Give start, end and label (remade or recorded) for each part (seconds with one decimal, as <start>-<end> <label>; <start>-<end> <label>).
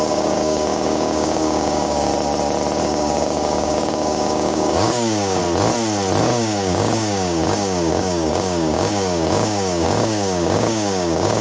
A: 0.0-2.1 remade; 2.1-2.8 recorded; 2.8-5.4 remade; 5.4-6.2 recorded; 6.2-11.4 remade